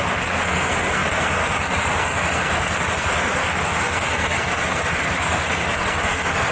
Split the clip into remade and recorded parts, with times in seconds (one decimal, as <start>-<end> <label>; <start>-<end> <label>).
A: 0.0-6.5 remade